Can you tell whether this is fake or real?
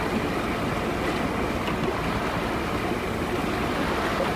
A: real